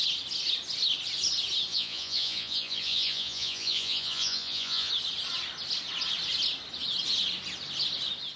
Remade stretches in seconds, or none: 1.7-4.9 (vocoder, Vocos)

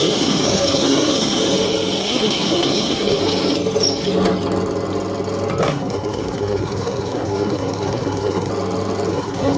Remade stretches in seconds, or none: 0.0-1.4 (codec, SNAC); 2.0-3.2; 5.6-8.5; 9.1-9.6

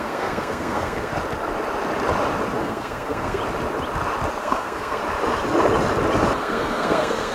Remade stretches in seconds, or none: 0.0-1.1 (codec, SNAC); 2.6-3.4; 4.4-5.0; 6.4-7.3

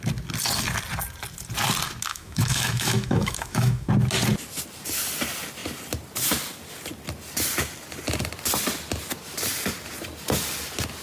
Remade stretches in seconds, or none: 2.1-3.9 (autoencoder, DAC-VAE)

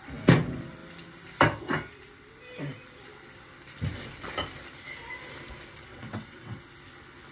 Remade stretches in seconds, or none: 5.9-6.6 (vocoder, WaveNeXt)

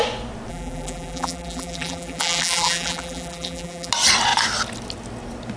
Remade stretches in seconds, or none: 0.5-3.9 (vocoder, BigVGAN v2)

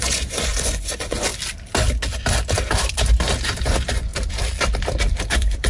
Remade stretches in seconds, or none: 0.0-1.3 (vocoder, Vocos); 3.6-4.1; 5.3-5.7